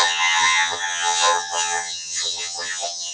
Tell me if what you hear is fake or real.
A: fake